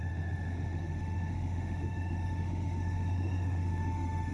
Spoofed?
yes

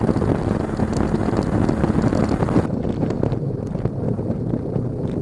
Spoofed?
no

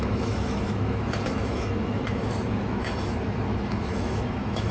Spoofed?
yes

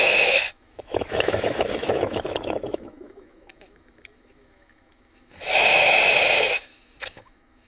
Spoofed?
yes